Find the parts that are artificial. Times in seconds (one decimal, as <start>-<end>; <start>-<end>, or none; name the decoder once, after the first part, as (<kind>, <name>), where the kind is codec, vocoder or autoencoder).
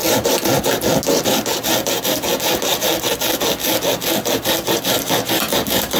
none